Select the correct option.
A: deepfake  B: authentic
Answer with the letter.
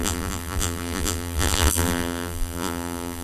A